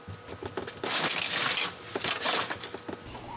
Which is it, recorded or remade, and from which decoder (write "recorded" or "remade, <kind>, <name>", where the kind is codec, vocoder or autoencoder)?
recorded